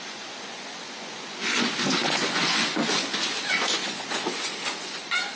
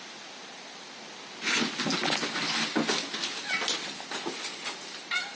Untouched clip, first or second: second